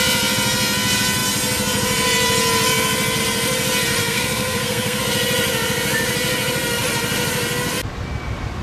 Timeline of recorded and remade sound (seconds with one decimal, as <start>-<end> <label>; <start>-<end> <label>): 0.0-4.0 recorded; 4.0-5.0 remade; 5.0-8.6 recorded

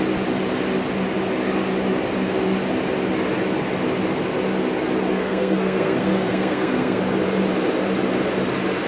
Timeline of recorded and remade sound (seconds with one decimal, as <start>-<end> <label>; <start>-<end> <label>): 0.0-5.1 recorded; 5.1-7.0 remade; 7.0-8.9 recorded

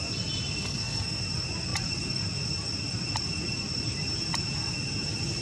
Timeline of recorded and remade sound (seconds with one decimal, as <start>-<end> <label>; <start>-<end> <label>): 0.0-0.6 recorded; 0.6-1.2 remade; 1.2-5.4 recorded

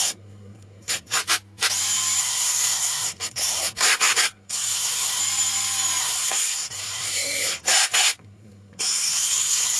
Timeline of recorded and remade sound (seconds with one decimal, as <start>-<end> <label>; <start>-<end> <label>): 0.0-1.2 remade; 1.2-2.2 recorded; 2.2-5.2 remade; 5.2-6.0 recorded; 6.0-9.8 remade

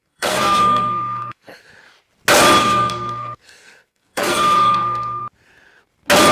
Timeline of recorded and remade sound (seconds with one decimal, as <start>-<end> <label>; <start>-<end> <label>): 0.0-1.6 remade; 1.6-2.6 recorded; 2.6-5.2 remade; 5.2-6.3 recorded

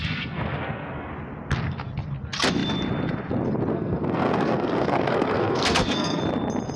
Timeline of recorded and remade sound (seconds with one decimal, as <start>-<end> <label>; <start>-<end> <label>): 0.0-1.1 remade; 1.1-3.7 recorded; 3.7-6.2 remade; 6.2-6.8 recorded

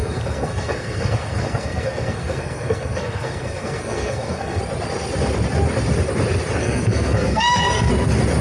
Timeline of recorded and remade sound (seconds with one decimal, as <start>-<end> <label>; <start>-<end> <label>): 0.0-4.6 remade; 4.6-6.6 recorded; 6.6-7.9 remade; 7.9-8.4 recorded